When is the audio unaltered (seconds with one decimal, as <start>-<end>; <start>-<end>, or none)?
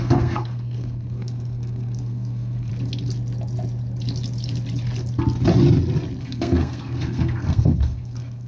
2.7-6.2